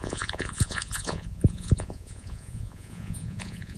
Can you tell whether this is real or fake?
fake